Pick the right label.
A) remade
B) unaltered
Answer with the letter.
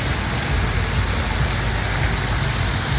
B